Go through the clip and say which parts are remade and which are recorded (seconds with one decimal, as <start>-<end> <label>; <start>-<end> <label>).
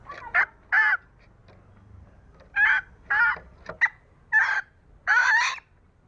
0.0-6.1 recorded